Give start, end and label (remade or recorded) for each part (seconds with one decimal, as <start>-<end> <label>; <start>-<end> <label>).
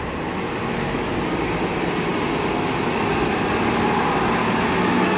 0.0-0.6 recorded; 0.6-1.1 remade; 1.1-4.4 recorded; 4.4-5.2 remade